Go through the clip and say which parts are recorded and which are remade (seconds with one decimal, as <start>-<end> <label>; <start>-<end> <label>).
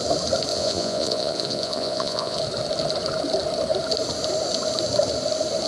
0.0-0.5 recorded; 0.5-2.4 remade; 2.4-5.7 recorded